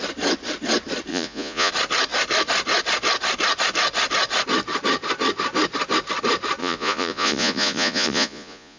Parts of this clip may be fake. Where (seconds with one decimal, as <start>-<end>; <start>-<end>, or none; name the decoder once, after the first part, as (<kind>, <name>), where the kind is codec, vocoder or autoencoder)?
1.1-1.7 (vocoder, Vocos); 6.6-8.8